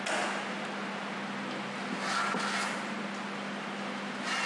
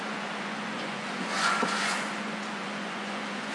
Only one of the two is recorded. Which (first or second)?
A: first